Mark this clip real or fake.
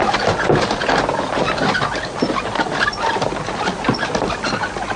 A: real